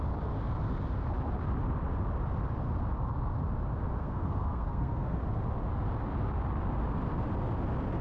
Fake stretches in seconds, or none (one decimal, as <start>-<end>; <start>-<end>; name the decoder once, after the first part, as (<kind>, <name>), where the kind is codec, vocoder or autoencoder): 4.0-5.2 (codec, SNAC)